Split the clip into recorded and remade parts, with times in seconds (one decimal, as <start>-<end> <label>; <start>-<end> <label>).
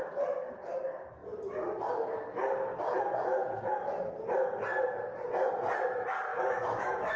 0.0-3.4 recorded; 3.4-4.1 remade; 4.1-6.3 recorded; 6.3-7.2 remade